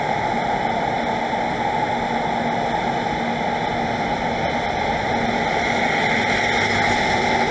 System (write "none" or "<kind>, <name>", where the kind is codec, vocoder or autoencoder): none